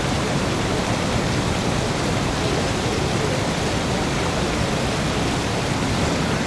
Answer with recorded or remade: recorded